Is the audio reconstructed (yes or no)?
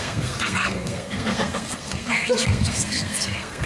yes